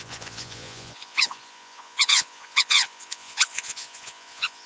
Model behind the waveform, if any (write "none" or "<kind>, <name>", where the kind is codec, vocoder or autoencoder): vocoder, Vocos